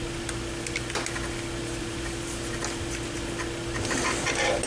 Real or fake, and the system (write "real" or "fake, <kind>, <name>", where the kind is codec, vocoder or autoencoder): real